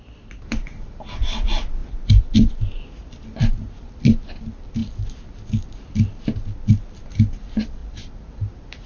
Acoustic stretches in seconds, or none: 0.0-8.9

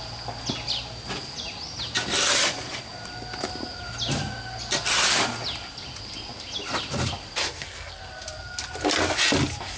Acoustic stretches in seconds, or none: 0.0-7.4; 8.0-9.8

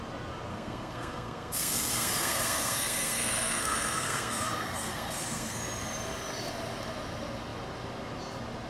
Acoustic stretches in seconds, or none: 0.0-0.5; 5.6-8.7

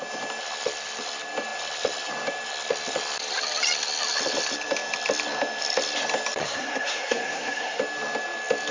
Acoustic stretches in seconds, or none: 0.0-6.4; 7.8-8.7

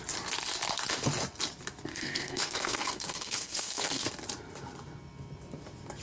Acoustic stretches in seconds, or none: 0.0-1.9; 4.1-6.0

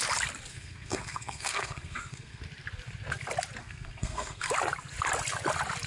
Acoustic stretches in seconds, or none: 0.0-0.5; 2.4-3.6; 4.5-5.9

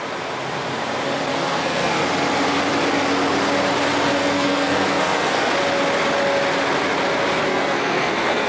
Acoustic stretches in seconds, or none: 0.0-1.3; 2.0-4.2; 5.5-7.5

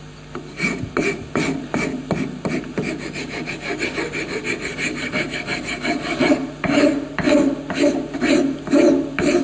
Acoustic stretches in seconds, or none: 0.0-9.4